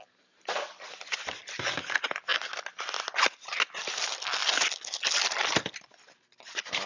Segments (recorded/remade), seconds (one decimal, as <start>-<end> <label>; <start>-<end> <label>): 0.0-6.9 recorded